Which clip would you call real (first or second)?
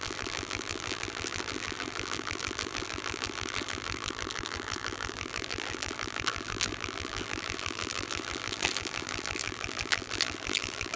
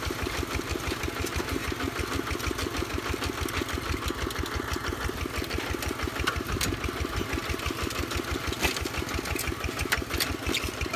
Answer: second